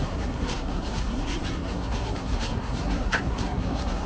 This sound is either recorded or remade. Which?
remade